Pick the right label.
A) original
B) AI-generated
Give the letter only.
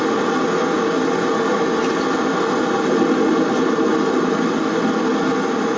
A